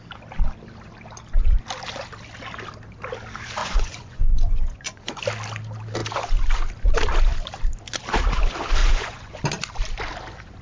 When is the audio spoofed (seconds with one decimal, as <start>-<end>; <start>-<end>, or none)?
3.6-5.2; 8.8-9.4